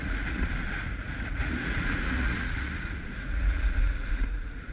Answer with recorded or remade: remade